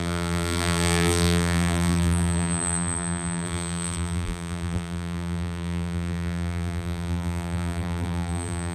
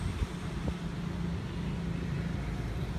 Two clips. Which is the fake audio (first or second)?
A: first